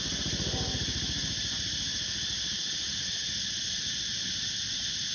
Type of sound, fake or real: real